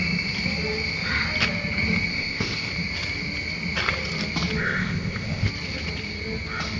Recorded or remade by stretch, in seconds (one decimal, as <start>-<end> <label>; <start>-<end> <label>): 0.0-2.1 recorded; 2.1-2.7 remade; 2.7-4.6 recorded; 4.6-5.5 remade; 5.5-6.8 recorded